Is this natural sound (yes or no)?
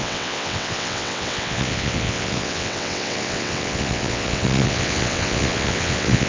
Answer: no